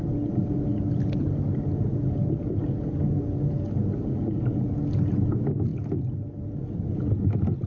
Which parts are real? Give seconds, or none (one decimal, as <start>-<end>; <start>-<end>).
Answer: 0.0-7.7